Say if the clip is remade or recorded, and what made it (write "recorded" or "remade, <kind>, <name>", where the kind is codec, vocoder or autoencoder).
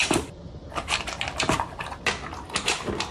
recorded